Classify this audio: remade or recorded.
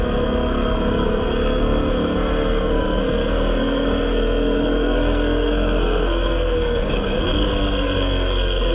remade